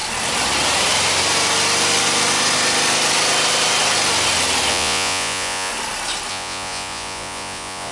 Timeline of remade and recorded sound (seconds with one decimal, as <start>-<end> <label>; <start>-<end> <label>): 0.0-4.7 recorded; 4.7-5.7 remade; 5.7-6.3 recorded; 6.3-7.9 remade